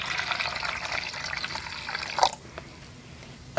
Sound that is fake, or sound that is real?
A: real